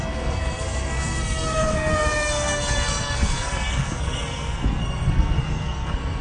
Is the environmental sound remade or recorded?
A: remade